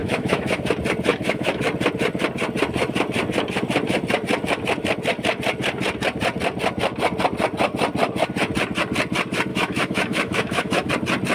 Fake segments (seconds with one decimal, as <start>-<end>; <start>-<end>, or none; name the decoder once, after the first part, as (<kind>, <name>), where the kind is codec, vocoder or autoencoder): 0.0-0.6 (autoencoder, DAC-VAE); 1.1-1.6; 9.5-10.9